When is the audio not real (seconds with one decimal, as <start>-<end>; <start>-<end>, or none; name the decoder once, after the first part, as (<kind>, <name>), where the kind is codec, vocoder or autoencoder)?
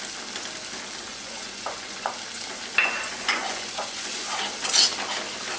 1.1-2.1 (vocoder, Vocos); 2.8-4.2